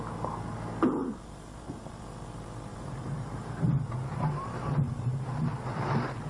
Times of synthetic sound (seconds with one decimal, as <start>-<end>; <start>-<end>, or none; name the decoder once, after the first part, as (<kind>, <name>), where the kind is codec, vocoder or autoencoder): 1.0-2.0 (vocoder, BigVGAN v2); 2.7-5.3